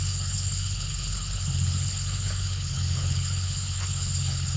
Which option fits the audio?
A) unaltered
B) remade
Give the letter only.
B